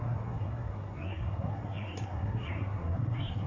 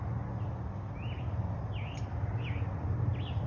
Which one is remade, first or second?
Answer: first